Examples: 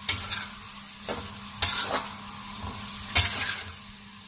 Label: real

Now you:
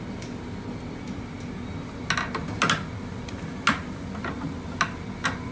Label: real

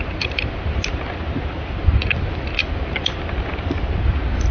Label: real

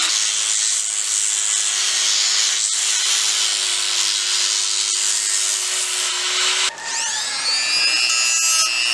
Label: real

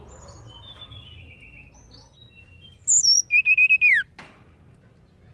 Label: real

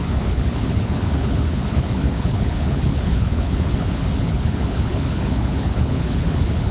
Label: fake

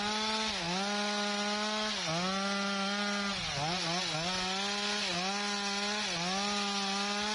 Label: real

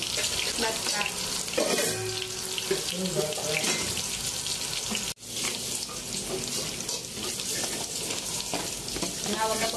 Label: real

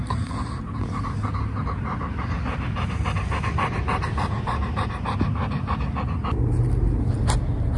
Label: real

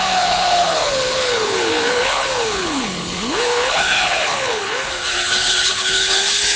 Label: fake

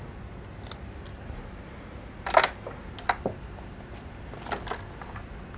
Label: real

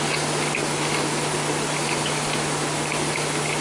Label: real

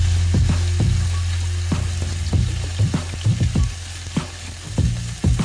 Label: real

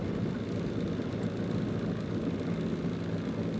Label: real